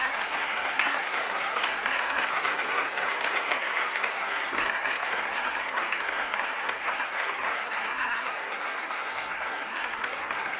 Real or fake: fake